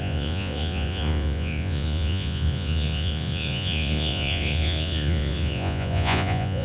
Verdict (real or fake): fake